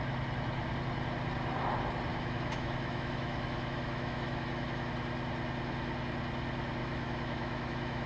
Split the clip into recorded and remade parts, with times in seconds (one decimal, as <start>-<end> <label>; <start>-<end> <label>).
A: 0.0-2.1 recorded; 2.1-4.9 remade; 4.9-6.8 recorded; 6.8-8.1 remade